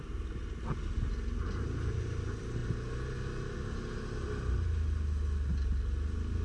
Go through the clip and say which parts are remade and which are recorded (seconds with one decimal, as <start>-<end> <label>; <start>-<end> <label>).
0.0-6.4 recorded